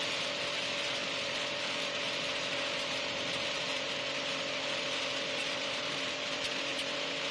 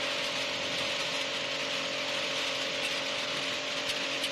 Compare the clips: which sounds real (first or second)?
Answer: second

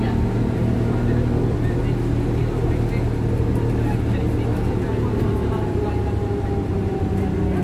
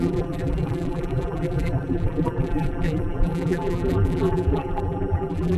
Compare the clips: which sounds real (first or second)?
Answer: first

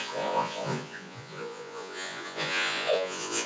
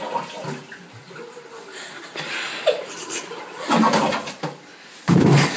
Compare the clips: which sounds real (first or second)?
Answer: second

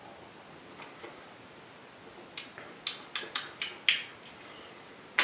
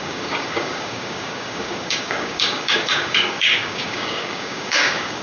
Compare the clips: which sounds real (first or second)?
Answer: first